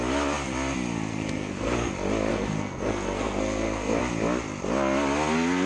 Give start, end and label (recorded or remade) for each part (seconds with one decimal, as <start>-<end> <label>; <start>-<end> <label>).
0.0-1.1 recorded; 1.1-1.9 remade; 1.9-2.3 recorded; 2.3-4.0 remade; 4.0-5.7 recorded